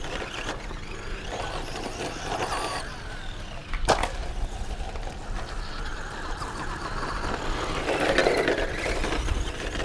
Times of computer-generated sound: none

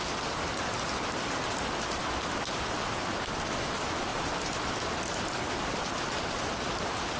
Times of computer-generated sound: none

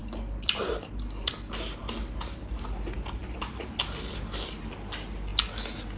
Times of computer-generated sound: none

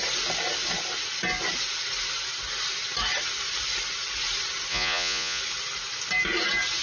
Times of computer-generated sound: 4.7-5.4 (vocoder, Vocos)

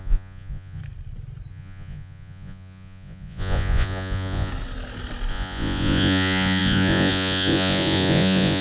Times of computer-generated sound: 0.0-0.8 (vocoder, Vocos); 1.5-4.5; 5.3-8.6

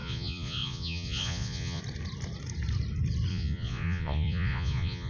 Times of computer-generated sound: 0.0-1.8 (vocoder, Vocos); 3.3-5.1

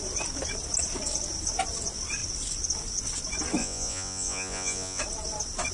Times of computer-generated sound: 3.6-5.0 (vocoder, Vocos)